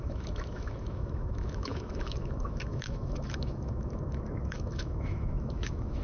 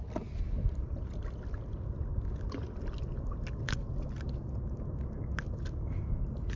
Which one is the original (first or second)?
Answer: second